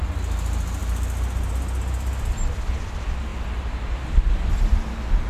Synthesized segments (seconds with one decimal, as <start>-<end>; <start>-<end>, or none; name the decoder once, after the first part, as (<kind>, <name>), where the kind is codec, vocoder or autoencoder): none